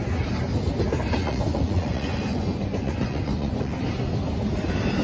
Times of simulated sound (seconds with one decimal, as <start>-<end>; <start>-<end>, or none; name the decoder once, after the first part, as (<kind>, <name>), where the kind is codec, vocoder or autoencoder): 1.2-3.8 (vocoder, Vocos)